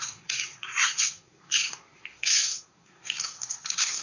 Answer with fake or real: fake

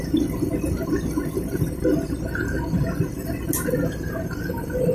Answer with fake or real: real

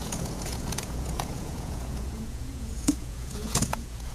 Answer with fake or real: fake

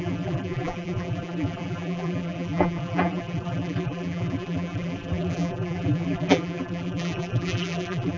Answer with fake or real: fake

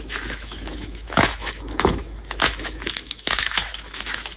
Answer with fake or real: fake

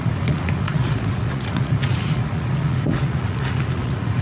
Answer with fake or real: fake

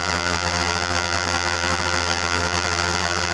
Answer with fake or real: fake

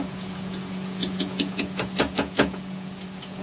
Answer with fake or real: fake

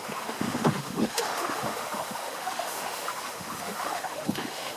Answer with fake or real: fake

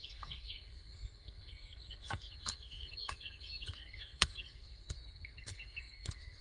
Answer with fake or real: fake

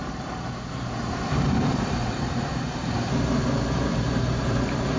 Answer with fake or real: fake